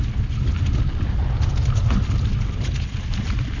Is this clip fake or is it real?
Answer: real